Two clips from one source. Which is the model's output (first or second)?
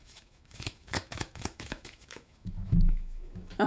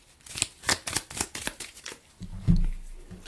first